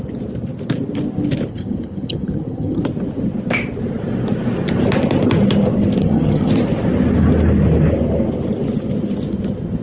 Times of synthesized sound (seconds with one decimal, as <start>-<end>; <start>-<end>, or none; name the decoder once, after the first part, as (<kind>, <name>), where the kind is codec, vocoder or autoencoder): 1.5-2.8 (vocoder, HiFi-GAN); 6.0-6.5